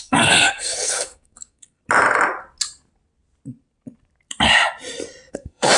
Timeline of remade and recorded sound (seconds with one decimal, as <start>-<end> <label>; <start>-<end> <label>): 0.0-1.8 remade; 1.8-5.3 recorded; 5.3-5.8 remade